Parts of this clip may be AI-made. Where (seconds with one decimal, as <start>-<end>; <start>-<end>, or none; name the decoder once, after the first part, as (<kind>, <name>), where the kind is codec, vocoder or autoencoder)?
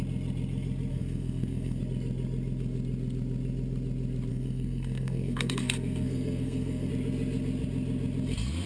0.9-1.8 (codec, SNAC); 4.3-6.9